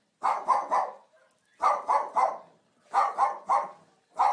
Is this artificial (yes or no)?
no